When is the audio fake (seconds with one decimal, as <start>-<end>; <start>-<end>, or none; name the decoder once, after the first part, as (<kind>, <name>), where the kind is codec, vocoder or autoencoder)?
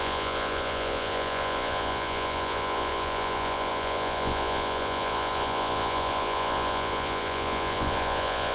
0.0-8.5 (vocoder, Vocos)